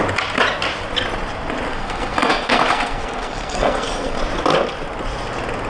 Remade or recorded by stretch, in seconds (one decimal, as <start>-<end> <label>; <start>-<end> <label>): 0.0-1.7 recorded; 1.7-4.2 remade; 4.2-5.7 recorded